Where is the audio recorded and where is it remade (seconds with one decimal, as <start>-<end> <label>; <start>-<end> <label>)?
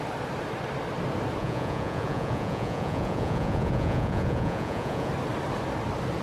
0.0-1.4 recorded; 1.4-5.1 remade; 5.1-6.2 recorded